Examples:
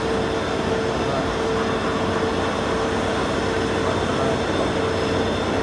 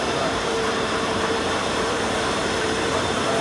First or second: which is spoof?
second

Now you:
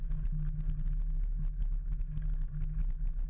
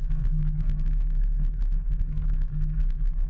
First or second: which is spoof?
second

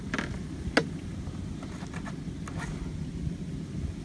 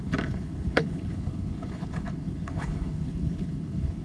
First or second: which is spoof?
second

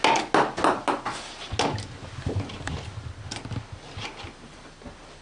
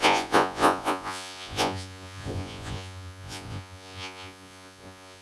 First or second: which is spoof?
second